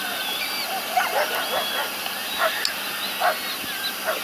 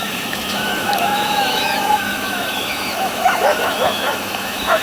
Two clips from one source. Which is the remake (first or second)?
second